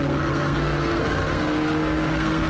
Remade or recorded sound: remade